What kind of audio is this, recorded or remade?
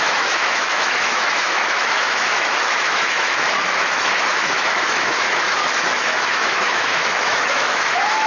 remade